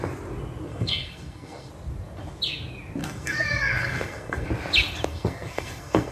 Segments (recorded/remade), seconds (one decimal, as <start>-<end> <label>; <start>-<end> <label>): 0.0-0.7 recorded; 0.7-1.7 remade; 1.7-3.0 recorded; 3.0-4.5 remade; 4.5-5.1 recorded; 5.1-6.1 remade